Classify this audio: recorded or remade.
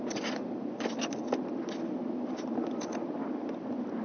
recorded